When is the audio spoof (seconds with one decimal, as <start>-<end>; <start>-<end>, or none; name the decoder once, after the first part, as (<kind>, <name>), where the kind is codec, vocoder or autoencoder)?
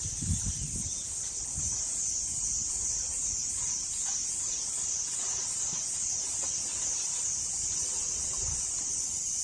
none